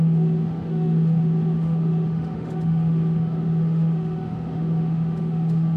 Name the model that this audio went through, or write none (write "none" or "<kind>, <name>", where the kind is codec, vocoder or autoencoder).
autoencoder, DAC-VAE